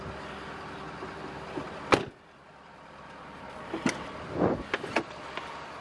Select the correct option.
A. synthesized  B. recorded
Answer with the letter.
B